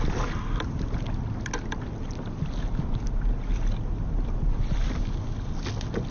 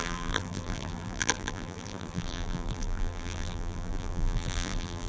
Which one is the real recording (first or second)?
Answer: first